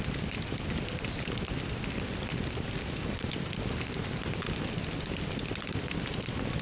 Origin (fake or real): real